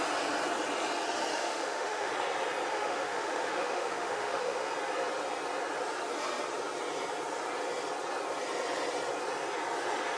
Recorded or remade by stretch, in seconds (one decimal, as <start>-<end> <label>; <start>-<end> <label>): 0.0-1.3 recorded; 1.3-2.1 remade; 2.1-2.7 recorded; 2.7-4.7 remade; 4.7-10.2 recorded